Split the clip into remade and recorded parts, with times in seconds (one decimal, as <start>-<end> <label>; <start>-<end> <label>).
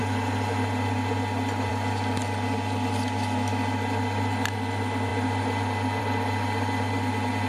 0.0-7.5 recorded